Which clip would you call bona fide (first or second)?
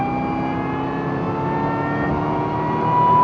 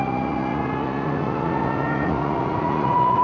first